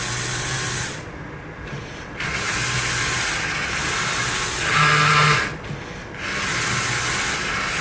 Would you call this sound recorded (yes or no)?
yes